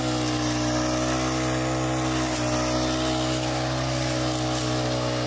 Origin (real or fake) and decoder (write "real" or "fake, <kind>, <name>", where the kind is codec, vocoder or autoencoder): real